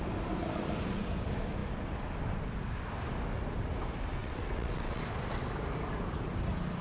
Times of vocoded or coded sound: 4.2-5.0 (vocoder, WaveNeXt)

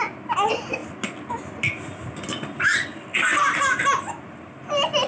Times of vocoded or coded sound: none

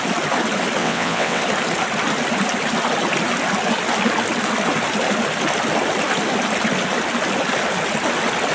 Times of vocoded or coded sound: 0.8-1.4 (vocoder, WaveNeXt)

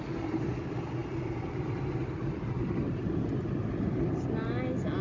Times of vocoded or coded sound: none

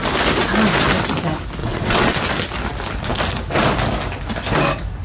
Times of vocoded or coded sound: 1.6-2.2 (vocoder, WaveNeXt)